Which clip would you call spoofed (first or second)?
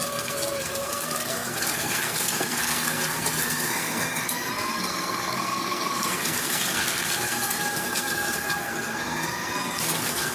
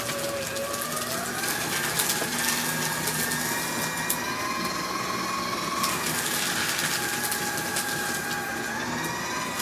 first